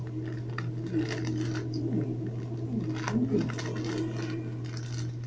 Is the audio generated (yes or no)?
no